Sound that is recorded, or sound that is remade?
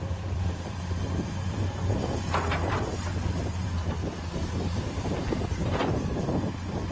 remade